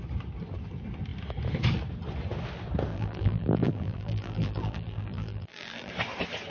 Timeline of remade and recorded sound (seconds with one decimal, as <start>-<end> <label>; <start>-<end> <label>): 0.0-2.9 recorded; 2.9-5.9 remade; 5.9-6.5 recorded